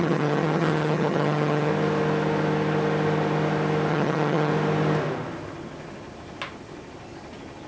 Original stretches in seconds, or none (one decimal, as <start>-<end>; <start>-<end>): 1.7-3.9; 4.5-7.7